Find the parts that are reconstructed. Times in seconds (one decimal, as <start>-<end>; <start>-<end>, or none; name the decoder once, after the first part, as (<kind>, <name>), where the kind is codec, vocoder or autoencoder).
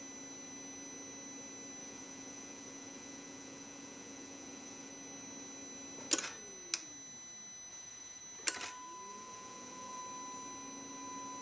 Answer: 1.8-4.9 (vocoder, Vocos); 7.7-8.2; 9.1-10.0